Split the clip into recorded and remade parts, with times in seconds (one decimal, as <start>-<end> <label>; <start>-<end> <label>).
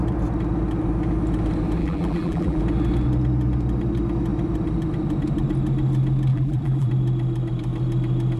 0.0-1.8 recorded; 1.8-2.6 remade; 2.6-6.3 recorded; 6.3-6.9 remade; 6.9-8.4 recorded